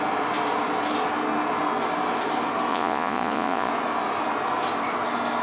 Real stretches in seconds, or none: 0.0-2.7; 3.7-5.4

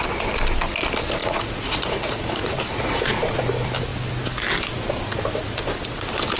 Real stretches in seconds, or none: 0.0-1.2; 3.4-6.4

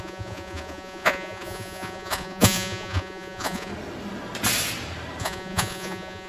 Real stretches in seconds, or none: 3.7-5.2

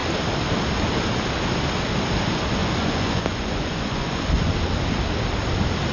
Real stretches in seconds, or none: 0.0-2.6; 4.5-5.9

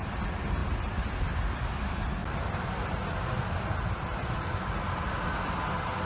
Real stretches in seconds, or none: 0.0-6.1

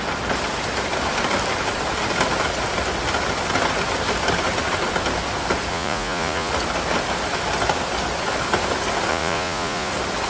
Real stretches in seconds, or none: 0.0-5.7; 6.5-9.1; 9.9-10.3